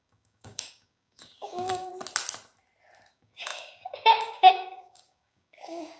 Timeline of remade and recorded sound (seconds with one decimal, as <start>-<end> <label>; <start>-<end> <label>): 0.0-1.9 remade; 1.9-3.1 recorded; 3.1-6.0 remade